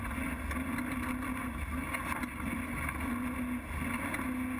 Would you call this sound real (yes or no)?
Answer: yes